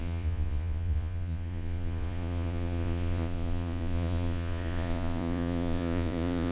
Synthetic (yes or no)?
yes